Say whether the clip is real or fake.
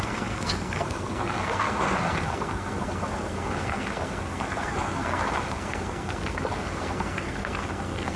fake